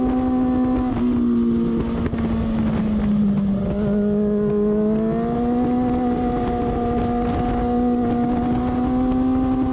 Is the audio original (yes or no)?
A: yes